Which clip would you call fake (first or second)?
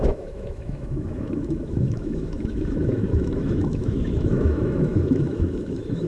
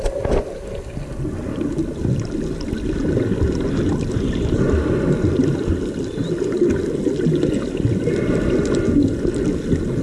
first